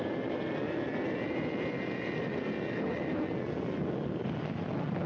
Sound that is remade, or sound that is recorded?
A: recorded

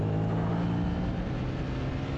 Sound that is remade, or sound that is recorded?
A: recorded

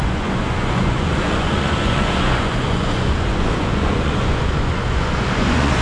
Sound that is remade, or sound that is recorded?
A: remade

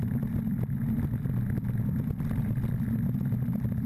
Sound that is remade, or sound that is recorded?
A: recorded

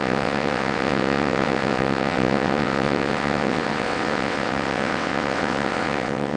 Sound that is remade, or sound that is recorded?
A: remade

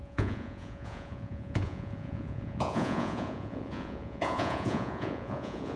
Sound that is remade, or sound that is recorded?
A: remade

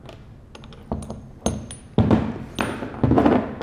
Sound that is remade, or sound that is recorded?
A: recorded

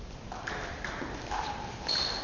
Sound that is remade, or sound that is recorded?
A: remade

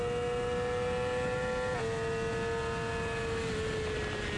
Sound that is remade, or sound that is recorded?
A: recorded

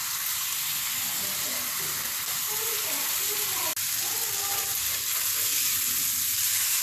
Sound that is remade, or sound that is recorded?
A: recorded